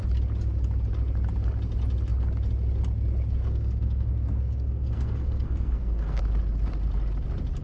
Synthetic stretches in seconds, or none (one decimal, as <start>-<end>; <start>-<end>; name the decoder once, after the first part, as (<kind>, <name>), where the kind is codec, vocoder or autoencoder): 3.4-6.2 (codec, SNAC)